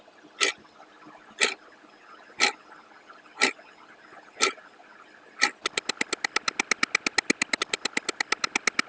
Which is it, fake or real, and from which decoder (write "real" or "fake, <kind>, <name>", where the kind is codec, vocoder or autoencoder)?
real